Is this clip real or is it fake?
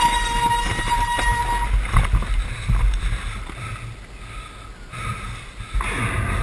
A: real